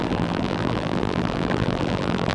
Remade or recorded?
remade